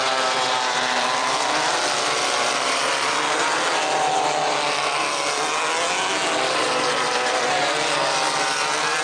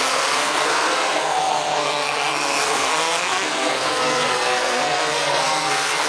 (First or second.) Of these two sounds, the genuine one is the first